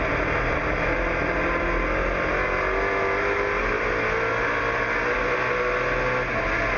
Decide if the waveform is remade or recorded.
recorded